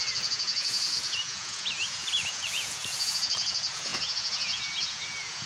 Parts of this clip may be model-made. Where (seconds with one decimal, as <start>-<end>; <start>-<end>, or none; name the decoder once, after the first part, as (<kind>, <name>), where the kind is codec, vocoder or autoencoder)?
0.0-5.5 (vocoder, Vocos)